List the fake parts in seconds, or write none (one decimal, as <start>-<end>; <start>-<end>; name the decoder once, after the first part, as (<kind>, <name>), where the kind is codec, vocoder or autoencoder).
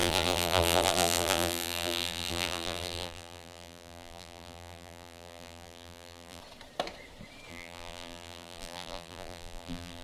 0.0-6.4 (vocoder, BigVGAN v2); 7.5-10.0